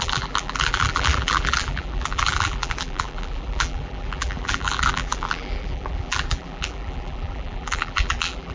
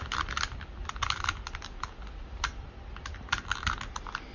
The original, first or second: second